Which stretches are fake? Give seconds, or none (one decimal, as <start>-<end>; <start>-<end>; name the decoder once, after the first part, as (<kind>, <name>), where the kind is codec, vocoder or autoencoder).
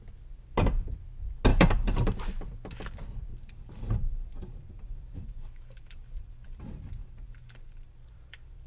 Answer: 1.5-2.2 (vocoder, BigVGAN v2); 3.3-6.6; 7.0-8.7